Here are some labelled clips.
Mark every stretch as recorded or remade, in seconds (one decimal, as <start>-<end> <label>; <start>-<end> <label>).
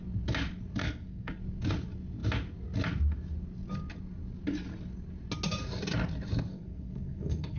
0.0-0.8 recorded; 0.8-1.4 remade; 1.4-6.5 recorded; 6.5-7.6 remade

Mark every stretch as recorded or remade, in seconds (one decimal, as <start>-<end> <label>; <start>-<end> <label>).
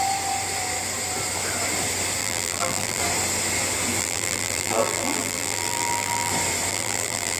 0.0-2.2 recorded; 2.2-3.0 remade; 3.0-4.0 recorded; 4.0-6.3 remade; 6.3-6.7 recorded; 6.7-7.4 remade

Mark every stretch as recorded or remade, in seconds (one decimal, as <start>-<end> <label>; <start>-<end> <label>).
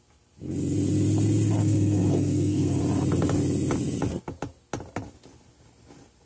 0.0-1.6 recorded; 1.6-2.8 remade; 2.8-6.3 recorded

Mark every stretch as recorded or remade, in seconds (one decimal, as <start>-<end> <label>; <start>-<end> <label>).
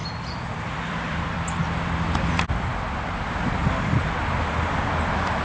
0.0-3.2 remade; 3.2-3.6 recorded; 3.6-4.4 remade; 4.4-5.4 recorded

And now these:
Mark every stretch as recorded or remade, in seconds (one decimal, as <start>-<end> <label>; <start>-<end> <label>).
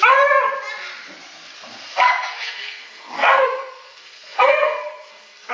0.0-1.9 recorded; 1.9-5.5 remade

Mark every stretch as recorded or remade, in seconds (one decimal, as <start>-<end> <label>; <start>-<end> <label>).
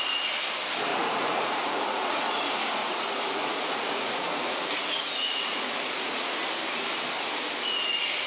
0.0-0.9 recorded; 0.9-2.4 remade; 2.4-2.8 recorded; 2.8-6.4 remade; 6.4-8.3 recorded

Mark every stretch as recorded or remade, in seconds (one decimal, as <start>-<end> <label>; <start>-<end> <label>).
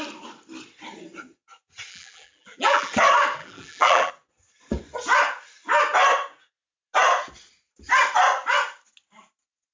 0.0-1.9 recorded; 1.9-2.9 remade; 2.9-3.4 recorded; 3.4-4.1 remade; 4.1-9.7 recorded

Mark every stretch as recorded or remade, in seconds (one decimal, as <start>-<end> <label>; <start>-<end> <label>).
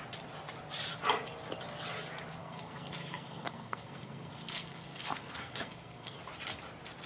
0.0-2.4 recorded; 2.4-6.2 remade; 6.2-7.1 recorded